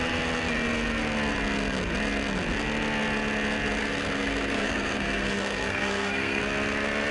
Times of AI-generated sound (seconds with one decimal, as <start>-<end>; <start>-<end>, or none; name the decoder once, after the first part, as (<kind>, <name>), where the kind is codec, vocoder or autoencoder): 3.8-6.4 (codec, SNAC)